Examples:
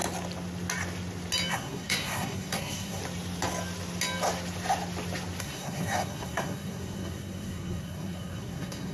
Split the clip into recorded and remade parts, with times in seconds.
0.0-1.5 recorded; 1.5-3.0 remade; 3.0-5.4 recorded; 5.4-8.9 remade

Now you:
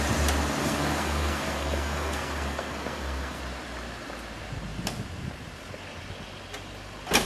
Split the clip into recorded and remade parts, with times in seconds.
0.0-0.6 recorded; 0.6-3.4 remade; 3.4-7.3 recorded

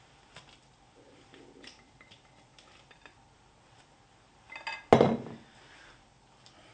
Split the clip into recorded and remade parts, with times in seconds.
0.0-6.7 recorded

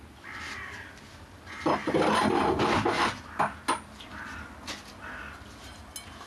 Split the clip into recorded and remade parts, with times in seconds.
0.0-6.3 recorded

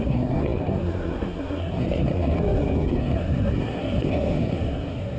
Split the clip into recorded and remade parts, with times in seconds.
0.0-5.2 remade

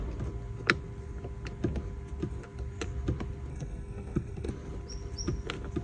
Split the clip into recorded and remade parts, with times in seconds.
0.0-3.5 recorded; 3.5-4.5 remade; 4.5-5.8 recorded